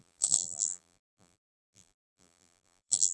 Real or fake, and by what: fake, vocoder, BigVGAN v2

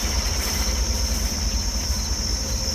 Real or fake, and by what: fake, vocoder, BigVGAN v2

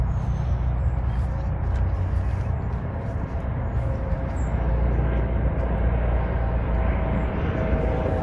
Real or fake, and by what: real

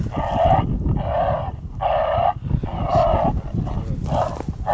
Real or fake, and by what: real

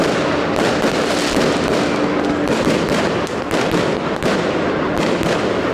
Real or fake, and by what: real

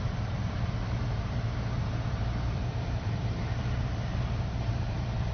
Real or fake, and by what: fake, vocoder, BigVGAN v2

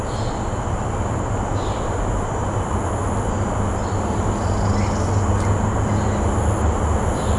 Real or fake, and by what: real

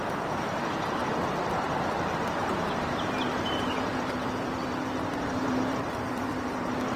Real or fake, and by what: fake, vocoder, BigVGAN v2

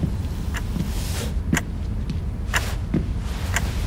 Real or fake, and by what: real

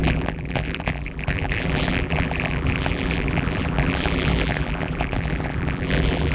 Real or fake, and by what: fake, vocoder, BigVGAN v2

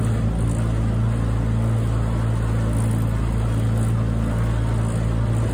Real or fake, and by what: real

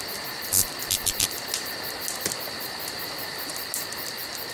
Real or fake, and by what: real